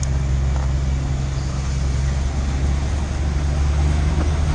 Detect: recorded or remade recorded